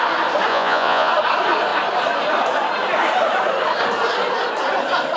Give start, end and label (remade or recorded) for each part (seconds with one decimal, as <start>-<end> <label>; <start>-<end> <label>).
0.0-0.5 recorded; 0.5-1.1 remade; 1.1-5.2 recorded